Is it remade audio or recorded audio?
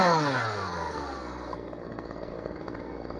remade